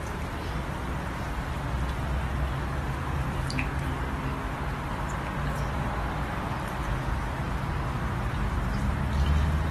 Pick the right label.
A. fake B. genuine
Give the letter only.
B